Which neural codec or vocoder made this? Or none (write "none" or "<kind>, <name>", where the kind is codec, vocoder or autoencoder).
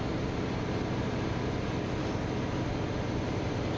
none